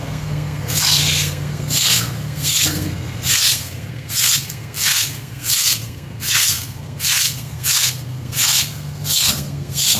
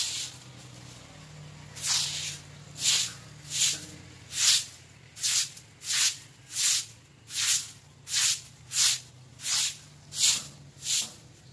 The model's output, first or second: first